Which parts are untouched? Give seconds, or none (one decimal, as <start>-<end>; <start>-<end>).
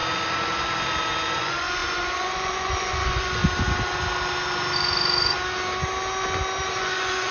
0.0-1.4; 3.4-6.8